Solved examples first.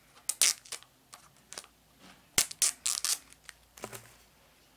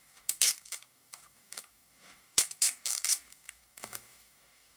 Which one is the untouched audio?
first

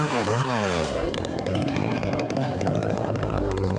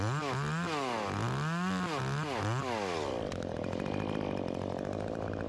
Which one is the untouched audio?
second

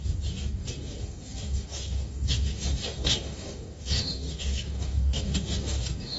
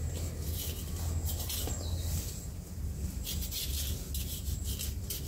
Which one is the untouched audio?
second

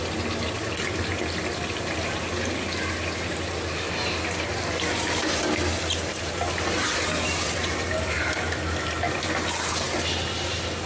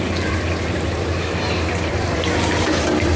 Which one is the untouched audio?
first